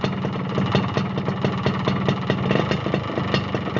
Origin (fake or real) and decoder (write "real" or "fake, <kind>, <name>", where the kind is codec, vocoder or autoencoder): real